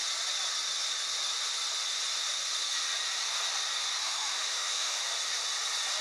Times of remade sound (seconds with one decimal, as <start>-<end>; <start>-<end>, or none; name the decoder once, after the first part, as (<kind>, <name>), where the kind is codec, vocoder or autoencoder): 4.0-5.0 (autoencoder, DAC-VAE)